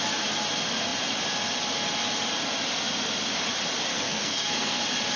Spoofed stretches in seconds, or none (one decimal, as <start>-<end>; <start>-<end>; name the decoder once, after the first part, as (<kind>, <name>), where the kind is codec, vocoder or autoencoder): 3.9-4.8 (codec, SNAC)